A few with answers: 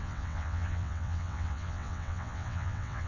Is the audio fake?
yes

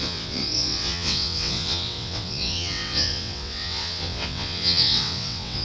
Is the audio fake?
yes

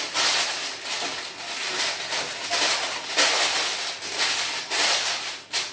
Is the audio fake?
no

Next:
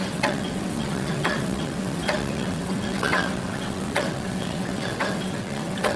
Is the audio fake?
yes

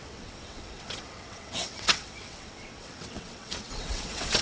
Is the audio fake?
yes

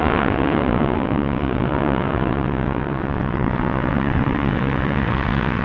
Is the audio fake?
yes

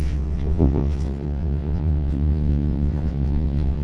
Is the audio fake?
yes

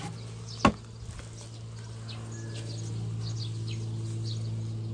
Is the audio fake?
no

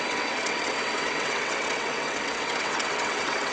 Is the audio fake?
yes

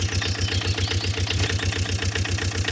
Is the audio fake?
no